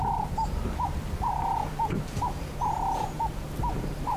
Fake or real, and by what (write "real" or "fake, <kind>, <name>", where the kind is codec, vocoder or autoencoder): fake, vocoder, BigVGAN v2